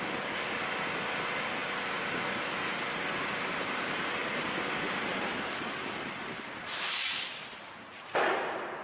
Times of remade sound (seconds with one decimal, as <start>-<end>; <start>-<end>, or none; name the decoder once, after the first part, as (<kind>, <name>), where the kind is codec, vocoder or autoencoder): none